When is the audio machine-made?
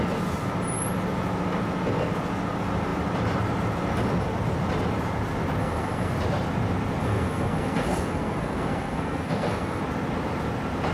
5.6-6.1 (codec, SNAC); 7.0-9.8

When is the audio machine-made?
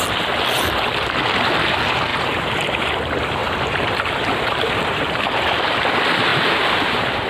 2.1-2.9 (vocoder, BigVGAN v2); 3.4-5.2; 6.3-7.3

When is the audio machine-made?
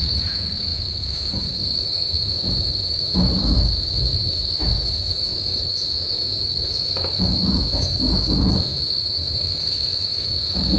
0.0-10.8 (autoencoder, DAC-VAE)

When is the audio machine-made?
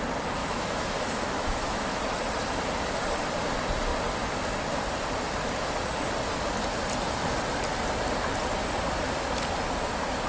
0.4-2.0 (autoencoder, DAC-VAE)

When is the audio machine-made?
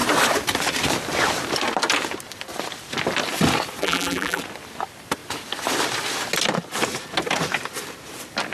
3.8-4.4 (vocoder, BigVGAN v2)